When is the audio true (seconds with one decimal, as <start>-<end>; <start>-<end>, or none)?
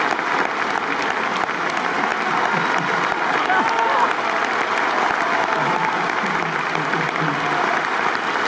0.0-8.5